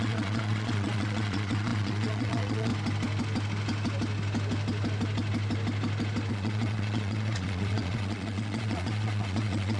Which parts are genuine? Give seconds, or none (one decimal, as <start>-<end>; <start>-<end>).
2.7-6.3